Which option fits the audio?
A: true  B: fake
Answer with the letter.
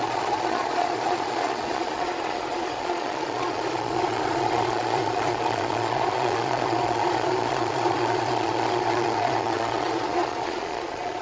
B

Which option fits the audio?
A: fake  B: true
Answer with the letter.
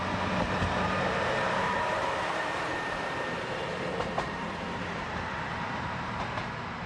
A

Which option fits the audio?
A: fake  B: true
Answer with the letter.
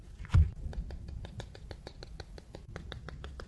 A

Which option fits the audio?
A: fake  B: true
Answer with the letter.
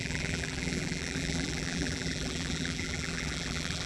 A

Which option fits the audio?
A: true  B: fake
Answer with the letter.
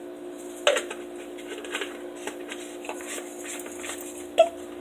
A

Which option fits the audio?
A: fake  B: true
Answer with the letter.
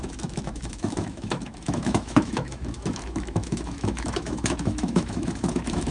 A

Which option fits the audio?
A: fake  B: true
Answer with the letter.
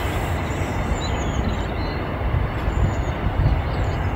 B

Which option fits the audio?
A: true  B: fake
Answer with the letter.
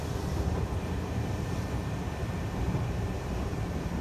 B